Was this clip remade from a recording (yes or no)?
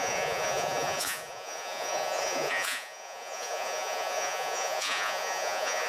yes